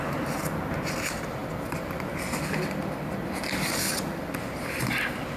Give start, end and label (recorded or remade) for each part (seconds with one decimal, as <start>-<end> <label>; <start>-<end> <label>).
0.0-5.4 recorded